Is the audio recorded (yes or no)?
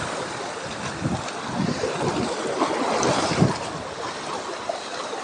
yes